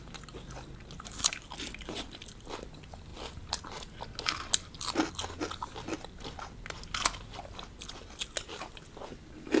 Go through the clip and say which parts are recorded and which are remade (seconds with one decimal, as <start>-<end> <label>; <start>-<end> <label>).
0.0-9.6 recorded